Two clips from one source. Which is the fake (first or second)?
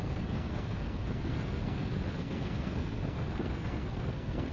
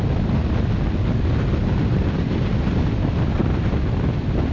first